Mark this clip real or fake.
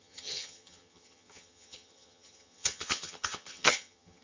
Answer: fake